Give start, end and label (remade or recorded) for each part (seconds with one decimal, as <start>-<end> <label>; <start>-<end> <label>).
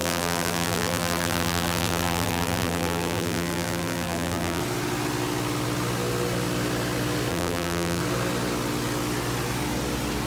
0.0-4.6 remade; 4.6-7.3 recorded; 7.3-8.0 remade; 8.0-10.3 recorded